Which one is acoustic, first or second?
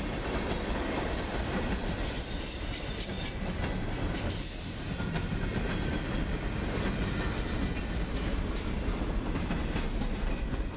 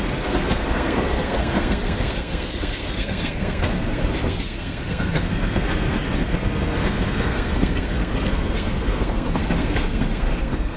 first